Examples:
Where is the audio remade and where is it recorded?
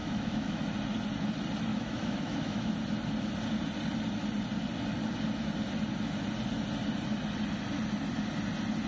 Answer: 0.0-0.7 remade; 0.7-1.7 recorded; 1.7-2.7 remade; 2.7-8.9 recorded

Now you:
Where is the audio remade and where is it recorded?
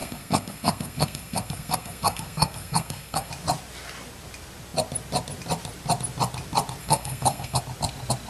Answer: 0.0-3.3 remade; 3.3-6.8 recorded; 6.8-7.6 remade; 7.6-8.3 recorded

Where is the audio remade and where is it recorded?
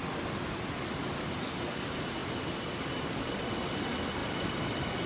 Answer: 0.0-1.1 remade; 1.1-2.2 recorded; 2.2-3.4 remade; 3.4-4.2 recorded; 4.2-5.1 remade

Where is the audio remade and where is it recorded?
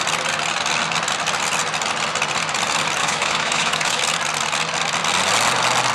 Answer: 0.0-3.0 recorded; 3.0-4.0 remade; 4.0-5.9 recorded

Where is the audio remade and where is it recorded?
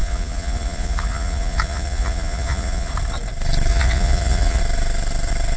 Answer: 0.0-2.9 remade; 2.9-3.7 recorded; 3.7-4.6 remade; 4.6-5.6 recorded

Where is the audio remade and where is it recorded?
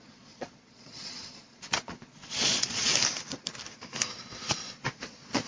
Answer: 0.0-2.9 remade; 2.9-4.5 recorded; 4.5-5.5 remade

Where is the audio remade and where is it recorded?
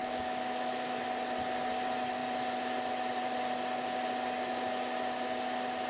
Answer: 0.0-1.0 remade; 1.0-5.9 recorded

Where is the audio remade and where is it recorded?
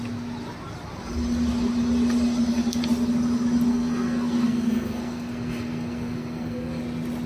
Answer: 0.0-3.7 recorded; 3.7-6.8 remade; 6.8-7.3 recorded